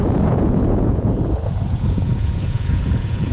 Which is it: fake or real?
fake